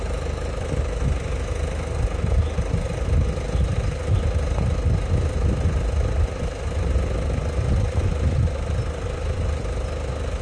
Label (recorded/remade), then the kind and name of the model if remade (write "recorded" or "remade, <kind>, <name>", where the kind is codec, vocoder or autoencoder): recorded